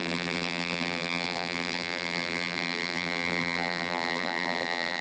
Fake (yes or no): yes